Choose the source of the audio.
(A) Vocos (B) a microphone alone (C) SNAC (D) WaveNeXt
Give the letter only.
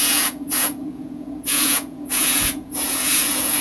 A